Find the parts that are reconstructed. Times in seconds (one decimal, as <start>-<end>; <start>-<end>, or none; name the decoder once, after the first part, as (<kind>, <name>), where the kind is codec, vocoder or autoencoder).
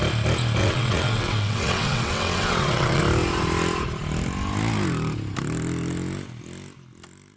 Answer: 0.6-3.0 (vocoder, WaveNeXt)